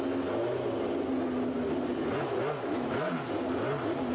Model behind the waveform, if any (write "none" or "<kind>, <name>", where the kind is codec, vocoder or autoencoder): none